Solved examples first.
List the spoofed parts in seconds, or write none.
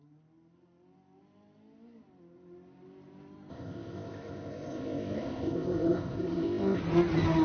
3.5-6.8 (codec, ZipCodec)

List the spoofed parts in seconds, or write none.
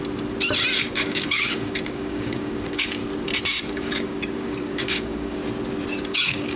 0.9-3.0 (codec, DAC); 3.7-5.4; 5.9-6.6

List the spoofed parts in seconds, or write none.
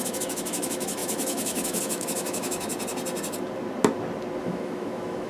0.0-2.7 (autoencoder, DAC-VAE); 4.4-5.3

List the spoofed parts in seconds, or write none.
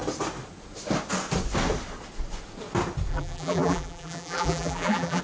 3.1-5.2 (vocoder, BigVGAN v2)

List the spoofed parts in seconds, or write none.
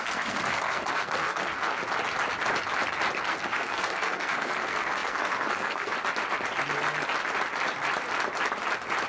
0.0-1.8 (codec, SNAC); 3.2-5.9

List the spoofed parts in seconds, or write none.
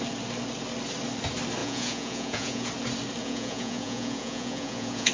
1.6-2.7 (vocoder, Vocos); 3.2-5.1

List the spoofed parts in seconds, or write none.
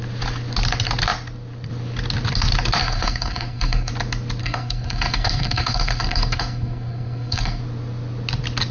2.8-3.9 (codec, SNAC); 4.4-7.6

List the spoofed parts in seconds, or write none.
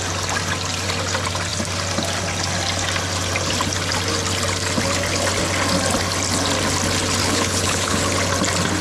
7.2-8.0 (codec, HILCodec)